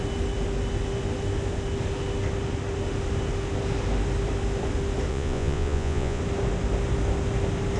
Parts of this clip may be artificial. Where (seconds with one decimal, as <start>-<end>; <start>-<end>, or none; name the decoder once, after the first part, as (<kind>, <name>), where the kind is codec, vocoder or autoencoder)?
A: 5.1-6.2 (vocoder, Vocos)